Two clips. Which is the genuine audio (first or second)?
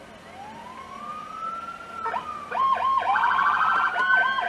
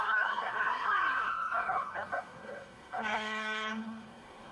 first